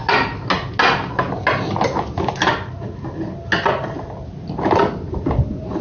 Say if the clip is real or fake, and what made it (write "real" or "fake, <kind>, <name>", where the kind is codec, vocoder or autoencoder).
real